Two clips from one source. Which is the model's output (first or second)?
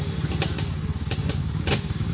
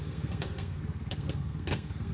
second